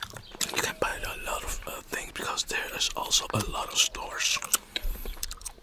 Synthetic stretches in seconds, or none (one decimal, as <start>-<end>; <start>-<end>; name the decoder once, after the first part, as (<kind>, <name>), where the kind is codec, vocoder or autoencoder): 0.0-0.9 (vocoder, BigVGAN v2); 4.1-5.6